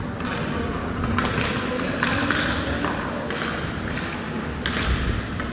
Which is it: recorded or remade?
recorded